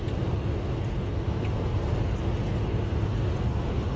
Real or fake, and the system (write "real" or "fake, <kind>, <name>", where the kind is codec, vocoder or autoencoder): real